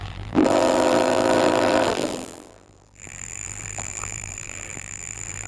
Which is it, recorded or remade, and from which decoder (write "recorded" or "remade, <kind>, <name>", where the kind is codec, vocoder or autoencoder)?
remade, vocoder, BigVGAN v2